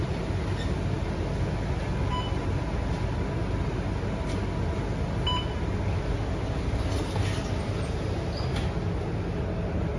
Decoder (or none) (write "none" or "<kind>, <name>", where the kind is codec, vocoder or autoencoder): none